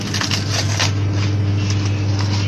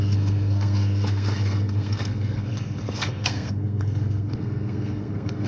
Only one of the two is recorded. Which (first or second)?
first